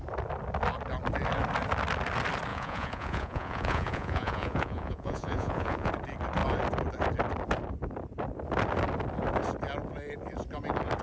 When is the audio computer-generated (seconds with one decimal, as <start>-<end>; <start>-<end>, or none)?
2.5-5.9